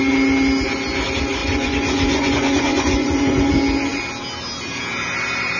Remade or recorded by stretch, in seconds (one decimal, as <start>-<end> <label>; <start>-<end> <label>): 0.0-1.4 recorded; 1.4-3.5 remade; 3.5-5.6 recorded